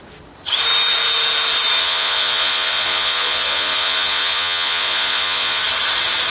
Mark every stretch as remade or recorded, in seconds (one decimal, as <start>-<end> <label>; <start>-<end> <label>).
0.0-1.8 recorded; 1.8-5.6 remade; 5.6-6.3 recorded